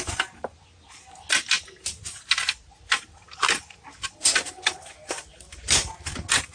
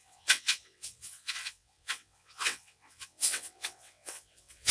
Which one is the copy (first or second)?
second